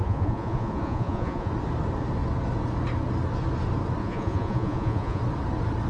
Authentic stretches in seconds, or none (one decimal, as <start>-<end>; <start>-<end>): 1.5-4.0; 5.2-5.9